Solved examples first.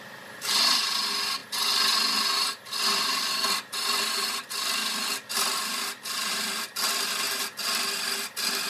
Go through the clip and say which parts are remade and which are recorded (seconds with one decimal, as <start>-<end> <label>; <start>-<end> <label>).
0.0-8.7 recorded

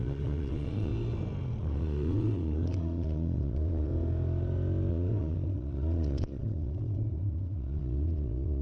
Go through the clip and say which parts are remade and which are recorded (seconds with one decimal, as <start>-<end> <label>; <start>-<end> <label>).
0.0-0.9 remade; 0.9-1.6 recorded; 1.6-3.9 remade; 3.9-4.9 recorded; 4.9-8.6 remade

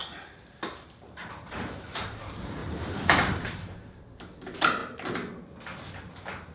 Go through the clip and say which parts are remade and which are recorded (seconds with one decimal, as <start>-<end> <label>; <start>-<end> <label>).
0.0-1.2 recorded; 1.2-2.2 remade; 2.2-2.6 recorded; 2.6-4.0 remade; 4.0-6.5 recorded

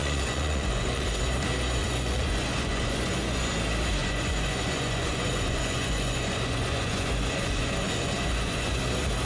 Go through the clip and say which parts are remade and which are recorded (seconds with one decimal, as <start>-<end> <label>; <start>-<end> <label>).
0.0-1.2 remade; 1.2-1.8 recorded; 1.8-3.5 remade; 3.5-4.0 recorded; 4.0-8.8 remade; 8.8-9.3 recorded